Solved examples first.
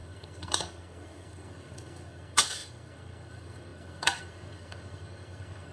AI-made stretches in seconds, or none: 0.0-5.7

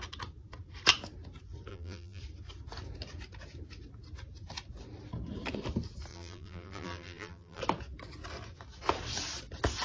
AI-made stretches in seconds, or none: 1.7-2.2; 6.1-7.6

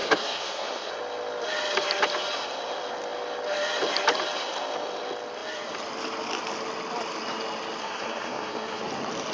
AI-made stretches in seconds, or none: 0.0-0.9; 7.8-8.8